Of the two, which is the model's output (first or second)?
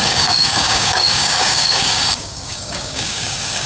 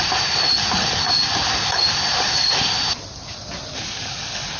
first